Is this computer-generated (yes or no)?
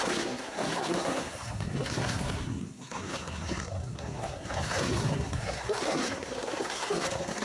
yes